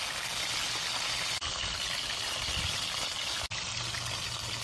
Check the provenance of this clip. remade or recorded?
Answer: recorded